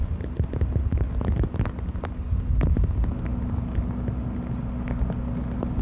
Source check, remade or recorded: recorded